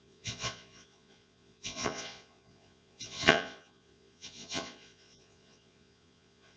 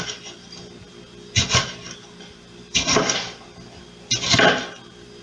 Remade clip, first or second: first